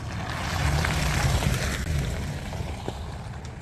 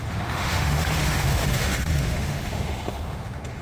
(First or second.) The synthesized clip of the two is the second